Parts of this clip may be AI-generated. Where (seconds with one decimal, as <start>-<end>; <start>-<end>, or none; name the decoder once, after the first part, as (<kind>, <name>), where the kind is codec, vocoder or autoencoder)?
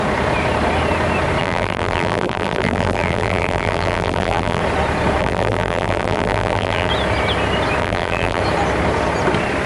1.4-4.6 (vocoder, BigVGAN v2); 5.2-6.9; 7.8-8.4